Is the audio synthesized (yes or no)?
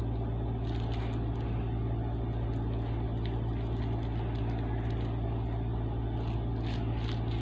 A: no